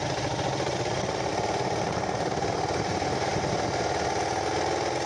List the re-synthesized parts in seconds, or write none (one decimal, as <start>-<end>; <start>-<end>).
none